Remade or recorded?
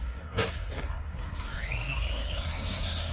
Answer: remade